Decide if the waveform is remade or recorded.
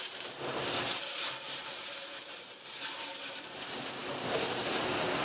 remade